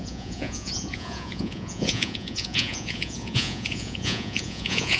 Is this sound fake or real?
fake